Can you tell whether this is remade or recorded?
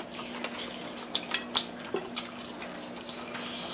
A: recorded